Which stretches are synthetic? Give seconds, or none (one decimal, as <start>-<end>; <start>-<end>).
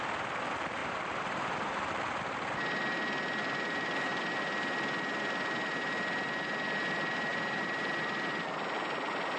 0.8-1.9; 3.4-4.2; 7.3-7.9